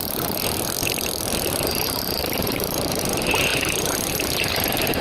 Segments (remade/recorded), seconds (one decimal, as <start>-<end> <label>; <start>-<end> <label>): 0.0-2.2 recorded; 2.2-3.0 remade; 3.0-5.0 recorded